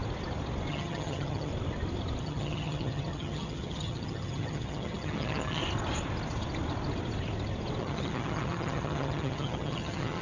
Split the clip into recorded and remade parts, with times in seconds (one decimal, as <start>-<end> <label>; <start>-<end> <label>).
0.0-0.7 recorded; 0.7-1.5 remade; 1.5-2.2 recorded; 2.2-5.6 remade; 5.6-7.8 recorded; 7.8-10.2 remade